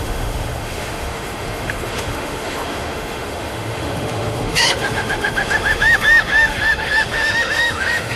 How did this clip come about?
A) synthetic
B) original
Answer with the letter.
A